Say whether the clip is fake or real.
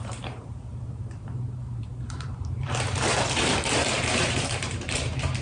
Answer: fake